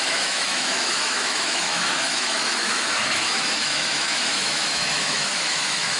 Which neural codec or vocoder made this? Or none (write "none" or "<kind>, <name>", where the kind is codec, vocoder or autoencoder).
autoencoder, DAC-VAE